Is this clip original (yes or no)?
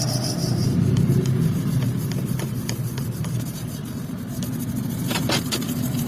no